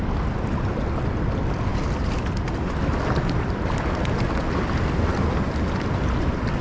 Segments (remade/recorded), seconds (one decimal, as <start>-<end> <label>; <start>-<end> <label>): 0.0-6.6 recorded